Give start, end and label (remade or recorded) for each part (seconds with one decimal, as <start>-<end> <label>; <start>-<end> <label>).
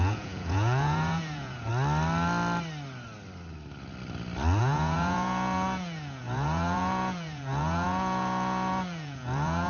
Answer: 0.0-1.7 remade; 1.7-4.6 recorded; 4.6-9.7 remade